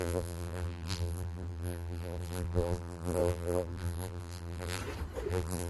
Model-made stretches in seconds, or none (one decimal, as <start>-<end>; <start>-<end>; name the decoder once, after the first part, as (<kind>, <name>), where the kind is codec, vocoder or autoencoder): 0.0-4.8 (vocoder, BigVGAN v2); 5.3-5.7